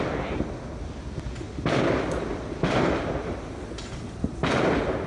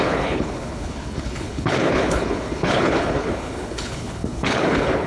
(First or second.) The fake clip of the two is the second